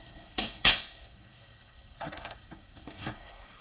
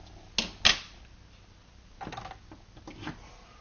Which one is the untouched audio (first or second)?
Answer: second